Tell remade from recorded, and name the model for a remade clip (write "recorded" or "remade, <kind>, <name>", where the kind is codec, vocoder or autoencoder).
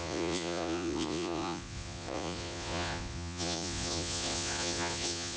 remade, vocoder, Vocos